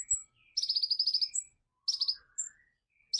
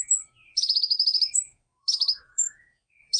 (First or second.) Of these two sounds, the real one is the first